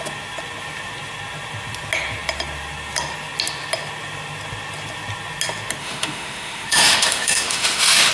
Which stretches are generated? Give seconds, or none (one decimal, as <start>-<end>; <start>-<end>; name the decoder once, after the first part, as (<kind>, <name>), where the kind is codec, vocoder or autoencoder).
5.8-8.1 (autoencoder, DAC-VAE)